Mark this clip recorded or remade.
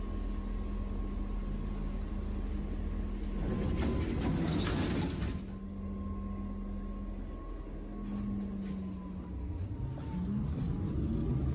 recorded